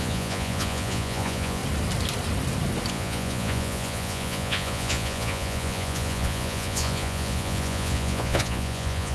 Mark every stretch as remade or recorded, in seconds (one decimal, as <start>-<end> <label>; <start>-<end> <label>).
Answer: 0.0-1.6 remade; 1.6-2.9 recorded; 2.9-9.1 remade